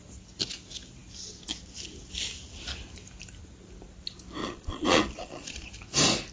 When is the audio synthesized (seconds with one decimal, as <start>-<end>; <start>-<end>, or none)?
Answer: 4.4-5.7